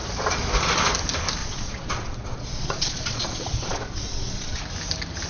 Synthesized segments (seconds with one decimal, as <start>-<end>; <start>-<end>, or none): 1.4-4.6